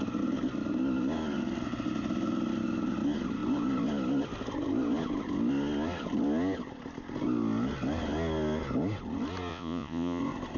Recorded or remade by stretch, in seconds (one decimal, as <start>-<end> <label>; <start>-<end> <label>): 0.0-9.5 recorded; 9.5-10.2 remade; 10.2-10.6 recorded